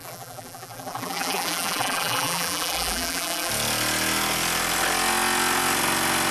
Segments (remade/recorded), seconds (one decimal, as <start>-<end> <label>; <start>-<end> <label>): 0.0-3.5 remade; 3.5-6.3 recorded

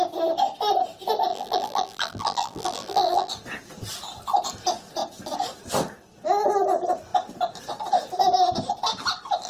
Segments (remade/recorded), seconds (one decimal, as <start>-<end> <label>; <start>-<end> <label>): 0.0-1.3 recorded; 1.3-3.3 remade; 3.3-9.5 recorded

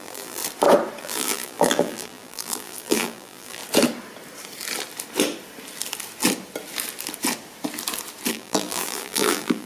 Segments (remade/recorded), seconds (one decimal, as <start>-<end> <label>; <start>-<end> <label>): 0.0-0.4 remade; 0.4-1.0 recorded; 1.0-3.6 remade; 3.6-8.3 recorded; 8.3-9.7 remade

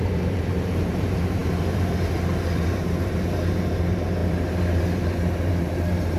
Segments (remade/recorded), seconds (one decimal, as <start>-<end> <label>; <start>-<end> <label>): 0.0-6.2 remade

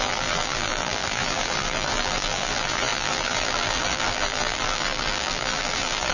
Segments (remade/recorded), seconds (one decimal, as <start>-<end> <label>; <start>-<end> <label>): 0.0-6.1 remade

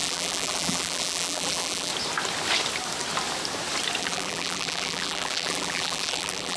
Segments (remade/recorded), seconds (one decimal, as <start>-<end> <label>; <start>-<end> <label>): 0.0-1.9 remade; 1.9-4.0 recorded; 4.0-6.6 remade